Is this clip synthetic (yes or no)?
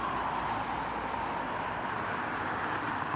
no